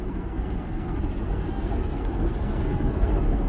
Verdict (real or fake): fake